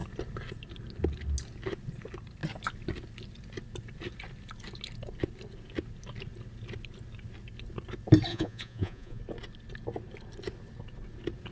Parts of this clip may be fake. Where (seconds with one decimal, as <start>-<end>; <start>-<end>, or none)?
8.3-9.2